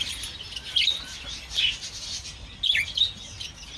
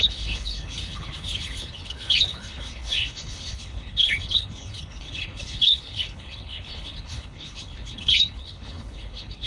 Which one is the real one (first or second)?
first